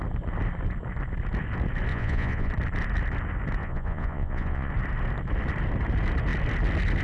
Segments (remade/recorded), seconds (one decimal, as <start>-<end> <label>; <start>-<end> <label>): 0.0-1.9 recorded; 1.9-2.5 remade; 2.5-3.6 recorded; 3.6-4.7 remade; 4.7-7.0 recorded